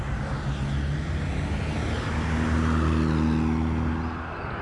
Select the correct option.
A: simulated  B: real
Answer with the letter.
B